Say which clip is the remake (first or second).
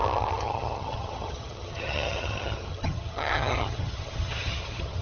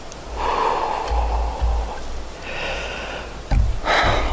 first